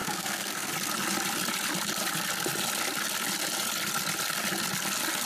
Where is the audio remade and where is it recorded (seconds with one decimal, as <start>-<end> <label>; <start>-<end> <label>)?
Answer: 0.0-0.7 remade; 0.7-5.3 recorded